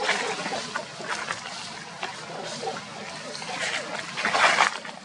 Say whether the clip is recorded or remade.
recorded